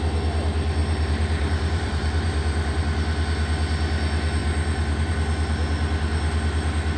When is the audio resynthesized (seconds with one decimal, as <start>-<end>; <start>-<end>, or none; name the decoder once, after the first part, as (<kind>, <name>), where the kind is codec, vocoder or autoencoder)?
0.8-2.8 (vocoder, BigVGAN v2); 4.4-5.1